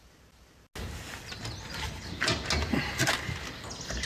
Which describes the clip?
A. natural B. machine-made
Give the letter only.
A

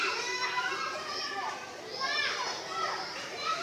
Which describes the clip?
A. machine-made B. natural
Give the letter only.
A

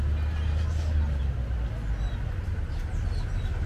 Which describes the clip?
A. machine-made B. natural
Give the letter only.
B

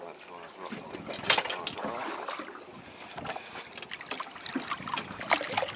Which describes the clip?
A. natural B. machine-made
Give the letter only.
A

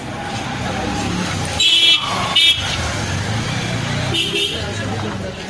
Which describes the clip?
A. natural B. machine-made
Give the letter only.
A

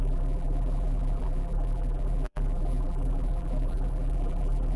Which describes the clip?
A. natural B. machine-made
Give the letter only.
B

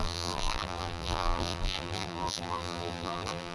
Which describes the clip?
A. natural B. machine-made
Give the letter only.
B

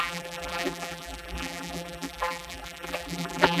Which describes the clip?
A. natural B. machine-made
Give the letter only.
B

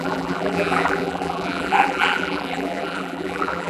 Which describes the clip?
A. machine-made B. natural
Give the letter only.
A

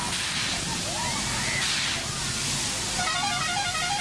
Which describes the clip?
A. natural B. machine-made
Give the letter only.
A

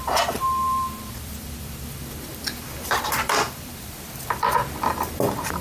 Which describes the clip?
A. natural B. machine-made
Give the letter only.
B